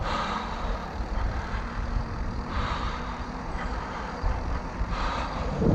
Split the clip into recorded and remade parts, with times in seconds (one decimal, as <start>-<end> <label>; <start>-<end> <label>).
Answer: 0.0-2.2 recorded; 2.2-5.7 remade